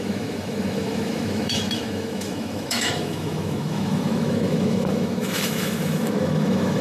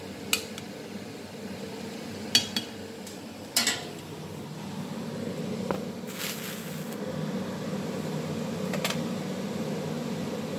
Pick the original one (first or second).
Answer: second